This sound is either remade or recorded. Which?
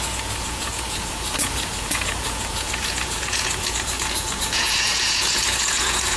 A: remade